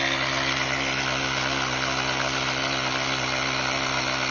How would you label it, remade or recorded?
recorded